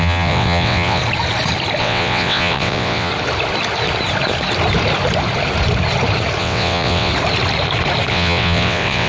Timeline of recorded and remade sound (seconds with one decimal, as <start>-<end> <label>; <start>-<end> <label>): 0.0-1.0 remade; 1.0-1.8 recorded; 1.8-3.1 remade; 3.1-6.4 recorded; 6.4-7.1 remade; 7.1-8.1 recorded; 8.1-9.1 remade